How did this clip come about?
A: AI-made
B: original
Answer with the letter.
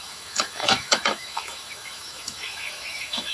A